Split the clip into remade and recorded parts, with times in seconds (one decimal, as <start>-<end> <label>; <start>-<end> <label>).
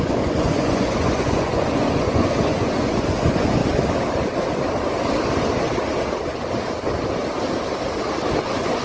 0.0-3.6 remade; 3.6-8.4 recorded; 8.4-8.8 remade